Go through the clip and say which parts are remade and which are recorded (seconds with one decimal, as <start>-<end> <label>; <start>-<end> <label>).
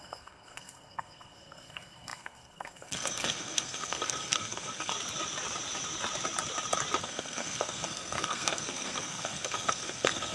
0.0-4.9 remade; 4.9-7.0 recorded; 7.0-10.3 remade